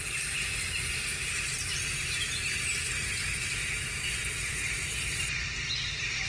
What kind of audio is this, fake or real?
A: real